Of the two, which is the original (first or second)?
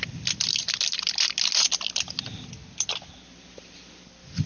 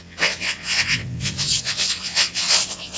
first